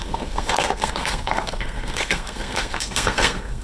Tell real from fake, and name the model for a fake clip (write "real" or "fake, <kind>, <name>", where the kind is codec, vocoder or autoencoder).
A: fake, codec, SNAC